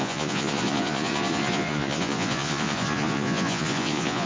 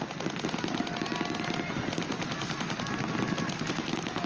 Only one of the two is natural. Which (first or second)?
second